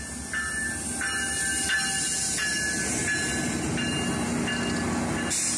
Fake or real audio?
real